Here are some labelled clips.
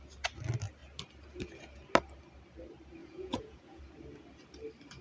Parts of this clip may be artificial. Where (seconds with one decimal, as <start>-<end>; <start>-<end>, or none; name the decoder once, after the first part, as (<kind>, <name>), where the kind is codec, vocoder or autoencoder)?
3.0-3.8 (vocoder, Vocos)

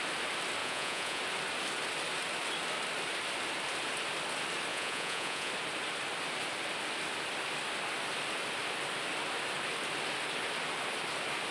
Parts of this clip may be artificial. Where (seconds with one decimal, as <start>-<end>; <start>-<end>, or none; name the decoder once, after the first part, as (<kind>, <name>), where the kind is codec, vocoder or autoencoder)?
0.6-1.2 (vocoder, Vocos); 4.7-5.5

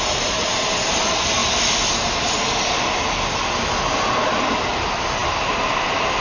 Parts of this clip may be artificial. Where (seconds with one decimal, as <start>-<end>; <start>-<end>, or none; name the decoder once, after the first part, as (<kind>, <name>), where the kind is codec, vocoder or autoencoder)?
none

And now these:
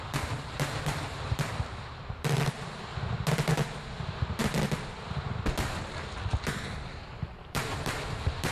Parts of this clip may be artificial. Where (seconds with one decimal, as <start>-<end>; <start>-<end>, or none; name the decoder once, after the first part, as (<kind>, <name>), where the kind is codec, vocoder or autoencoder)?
0.0-2.9 (vocoder, BigVGAN v2); 4.4-8.5

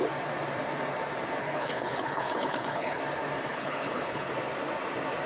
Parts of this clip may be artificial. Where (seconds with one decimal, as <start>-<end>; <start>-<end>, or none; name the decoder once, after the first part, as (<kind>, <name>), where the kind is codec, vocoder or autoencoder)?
1.4-3.0 (codec, HILCodec); 3.5-4.3

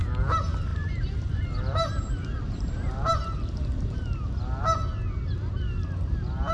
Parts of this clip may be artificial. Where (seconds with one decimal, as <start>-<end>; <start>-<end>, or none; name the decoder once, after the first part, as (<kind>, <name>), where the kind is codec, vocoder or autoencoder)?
none